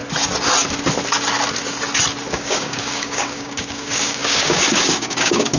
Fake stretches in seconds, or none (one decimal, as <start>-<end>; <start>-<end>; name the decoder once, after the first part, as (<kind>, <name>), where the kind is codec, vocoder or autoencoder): 2.3-5.6 (codec, DAC)